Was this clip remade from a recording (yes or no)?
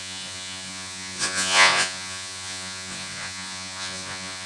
yes